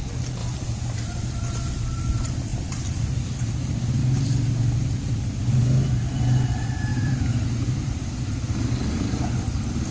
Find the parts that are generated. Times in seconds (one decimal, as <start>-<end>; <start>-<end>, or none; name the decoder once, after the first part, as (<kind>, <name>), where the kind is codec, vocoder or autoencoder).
2.5-4.0 (vocoder, BigVGAN v2); 6.9-8.3